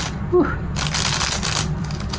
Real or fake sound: real